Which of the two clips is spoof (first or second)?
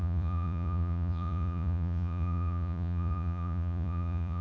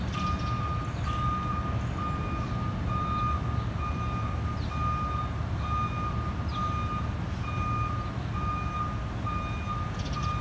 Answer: first